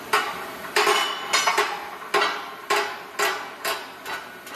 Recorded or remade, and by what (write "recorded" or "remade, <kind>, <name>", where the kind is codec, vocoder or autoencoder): recorded